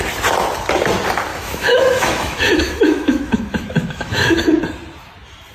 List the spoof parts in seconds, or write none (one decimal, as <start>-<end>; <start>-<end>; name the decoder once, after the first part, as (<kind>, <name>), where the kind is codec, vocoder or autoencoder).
1.3-4.6 (autoencoder, DAC-VAE)